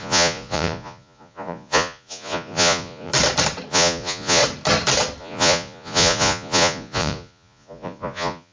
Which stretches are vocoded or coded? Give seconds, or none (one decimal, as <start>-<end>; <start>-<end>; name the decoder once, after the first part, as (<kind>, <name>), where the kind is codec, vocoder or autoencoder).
0.0-3.1 (vocoder, Vocos); 3.7-4.4; 5.2-8.5